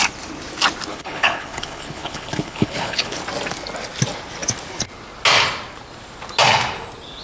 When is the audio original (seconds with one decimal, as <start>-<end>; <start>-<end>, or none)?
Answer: 0.0-0.9; 3.2-7.2